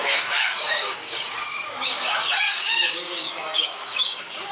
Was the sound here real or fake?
fake